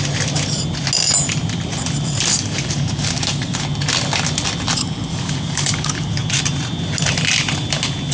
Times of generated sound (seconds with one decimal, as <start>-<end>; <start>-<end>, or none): 2.3-3.6; 5.1-6.4